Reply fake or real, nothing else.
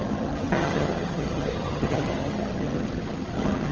fake